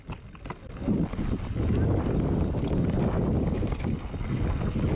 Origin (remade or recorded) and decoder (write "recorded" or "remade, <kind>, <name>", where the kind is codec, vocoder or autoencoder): recorded